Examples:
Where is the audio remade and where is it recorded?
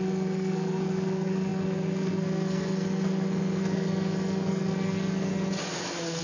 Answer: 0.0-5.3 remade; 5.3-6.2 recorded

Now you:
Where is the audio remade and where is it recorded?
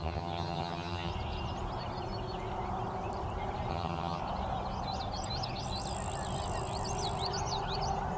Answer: 0.0-1.1 remade; 1.1-3.7 recorded; 3.7-4.2 remade; 4.2-8.2 recorded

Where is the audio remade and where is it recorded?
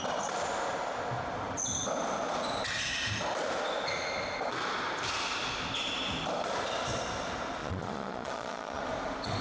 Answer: 0.0-7.6 recorded; 7.6-8.8 remade; 8.8-9.4 recorded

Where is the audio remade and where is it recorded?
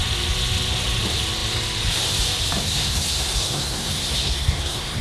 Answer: 0.0-2.6 recorded; 2.6-5.0 remade